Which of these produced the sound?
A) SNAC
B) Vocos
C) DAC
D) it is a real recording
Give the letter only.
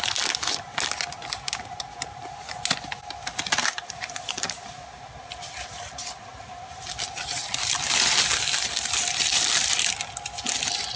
D